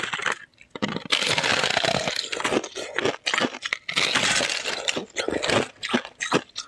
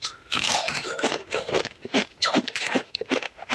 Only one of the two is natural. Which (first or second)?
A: first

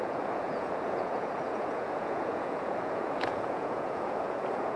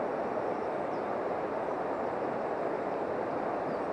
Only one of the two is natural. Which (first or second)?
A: second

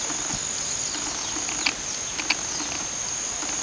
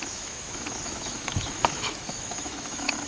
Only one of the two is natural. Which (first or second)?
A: first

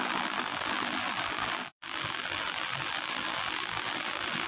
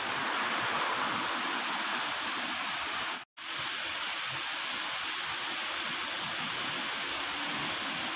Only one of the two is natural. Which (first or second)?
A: second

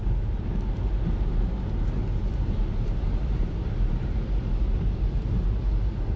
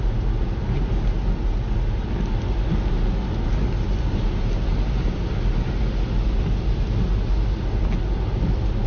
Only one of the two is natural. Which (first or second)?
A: second